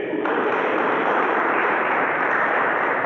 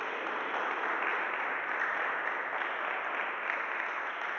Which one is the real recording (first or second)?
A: second